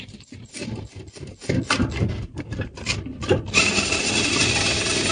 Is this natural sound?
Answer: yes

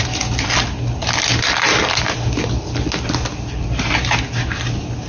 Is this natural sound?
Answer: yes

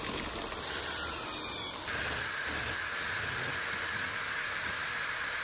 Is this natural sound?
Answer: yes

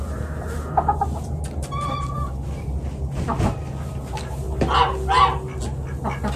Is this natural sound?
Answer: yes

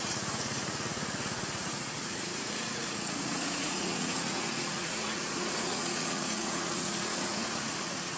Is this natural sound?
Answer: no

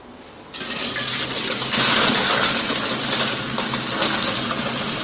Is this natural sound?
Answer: yes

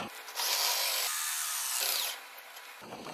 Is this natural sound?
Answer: yes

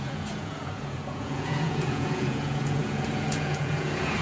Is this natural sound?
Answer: no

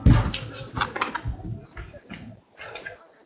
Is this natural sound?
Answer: yes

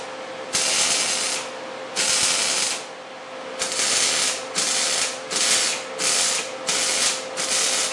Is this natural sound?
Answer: yes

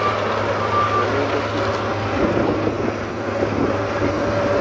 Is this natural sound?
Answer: yes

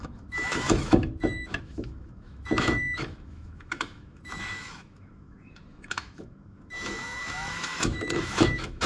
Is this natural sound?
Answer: no